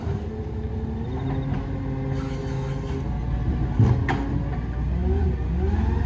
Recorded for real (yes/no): yes